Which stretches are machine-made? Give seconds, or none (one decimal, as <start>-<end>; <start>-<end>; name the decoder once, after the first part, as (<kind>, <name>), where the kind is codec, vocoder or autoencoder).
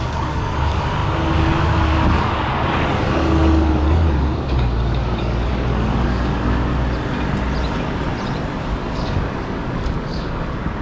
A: 0.0-6.7 (codec, DAC); 8.7-10.8